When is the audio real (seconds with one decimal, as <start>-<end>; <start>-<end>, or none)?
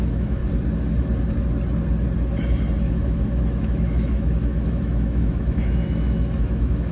0.4-2.9